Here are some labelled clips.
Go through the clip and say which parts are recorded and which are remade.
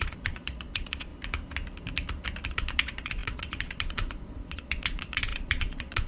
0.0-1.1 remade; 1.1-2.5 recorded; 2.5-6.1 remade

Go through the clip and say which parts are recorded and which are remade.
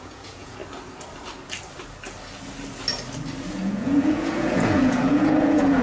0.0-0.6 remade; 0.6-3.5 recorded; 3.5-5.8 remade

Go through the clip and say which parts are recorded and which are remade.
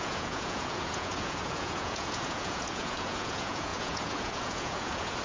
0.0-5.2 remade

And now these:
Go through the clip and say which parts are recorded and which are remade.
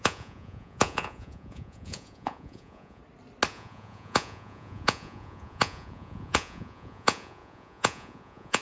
0.0-3.0 remade; 3.0-3.5 recorded; 3.5-8.6 remade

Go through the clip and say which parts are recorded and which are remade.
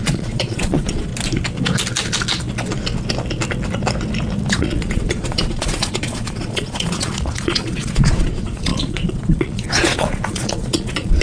0.0-1.1 remade; 1.1-4.5 recorded; 4.5-11.2 remade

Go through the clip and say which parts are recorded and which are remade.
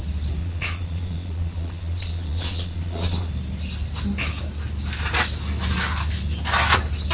0.0-0.4 recorded; 0.4-3.3 remade; 3.3-7.1 recorded